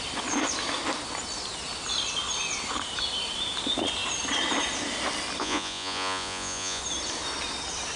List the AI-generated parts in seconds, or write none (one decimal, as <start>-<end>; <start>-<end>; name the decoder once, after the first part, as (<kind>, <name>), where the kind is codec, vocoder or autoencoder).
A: 5.4-6.8 (vocoder, Vocos)